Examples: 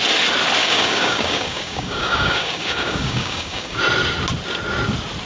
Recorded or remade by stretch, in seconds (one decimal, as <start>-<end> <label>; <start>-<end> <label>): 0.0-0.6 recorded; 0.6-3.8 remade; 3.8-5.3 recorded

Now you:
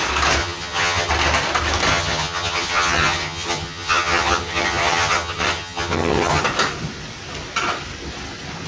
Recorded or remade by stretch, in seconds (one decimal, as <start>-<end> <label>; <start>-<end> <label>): 0.0-0.4 recorded; 0.4-1.1 remade; 1.1-1.9 recorded; 1.9-6.4 remade; 6.4-8.7 recorded

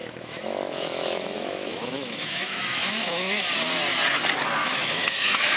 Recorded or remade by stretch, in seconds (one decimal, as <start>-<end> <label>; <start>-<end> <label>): 0.0-3.4 remade; 3.4-4.6 recorded; 4.6-5.6 remade

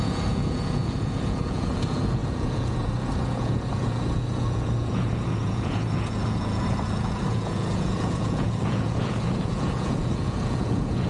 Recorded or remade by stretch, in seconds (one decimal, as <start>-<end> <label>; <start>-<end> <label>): 0.0-11.1 remade